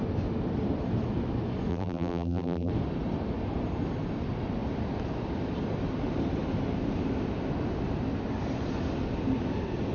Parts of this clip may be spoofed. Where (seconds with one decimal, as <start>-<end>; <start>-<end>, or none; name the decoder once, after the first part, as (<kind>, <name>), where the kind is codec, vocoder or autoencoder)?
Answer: 1.7-2.7 (vocoder, BigVGAN v2)

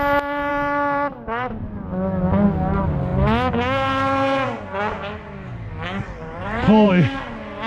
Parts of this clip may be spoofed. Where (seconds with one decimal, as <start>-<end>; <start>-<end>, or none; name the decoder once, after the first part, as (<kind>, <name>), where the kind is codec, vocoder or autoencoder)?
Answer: 6.2-6.9 (vocoder, BigVGAN v2)

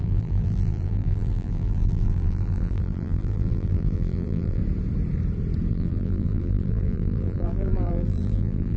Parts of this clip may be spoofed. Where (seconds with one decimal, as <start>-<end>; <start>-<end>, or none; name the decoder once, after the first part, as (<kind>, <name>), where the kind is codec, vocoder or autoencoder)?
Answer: 0.0-4.6 (vocoder, BigVGAN v2); 5.7-8.8